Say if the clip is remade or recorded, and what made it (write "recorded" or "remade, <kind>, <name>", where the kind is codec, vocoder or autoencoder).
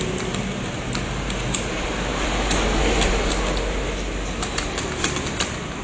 recorded